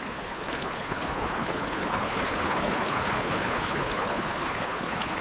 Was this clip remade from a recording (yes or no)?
yes